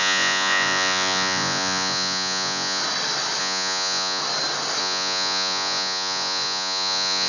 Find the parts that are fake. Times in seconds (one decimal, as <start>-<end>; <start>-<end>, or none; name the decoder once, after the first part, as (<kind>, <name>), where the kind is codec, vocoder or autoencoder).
0.0-2.8 (vocoder, Vocos); 3.4-4.2; 4.8-7.3